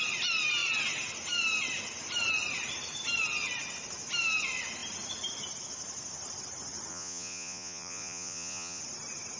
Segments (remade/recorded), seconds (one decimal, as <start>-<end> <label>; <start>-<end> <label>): 0.0-6.9 recorded; 6.9-8.8 remade; 8.8-9.4 recorded